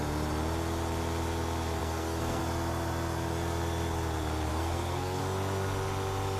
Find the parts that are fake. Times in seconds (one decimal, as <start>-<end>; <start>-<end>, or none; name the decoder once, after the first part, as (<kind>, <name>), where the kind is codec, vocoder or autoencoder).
1.8-2.4 (codec, SNAC); 4.5-5.2